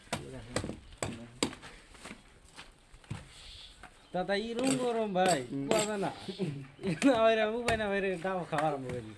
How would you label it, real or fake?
real